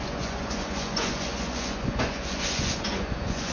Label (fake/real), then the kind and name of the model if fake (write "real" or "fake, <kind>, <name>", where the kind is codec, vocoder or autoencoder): fake, vocoder, Vocos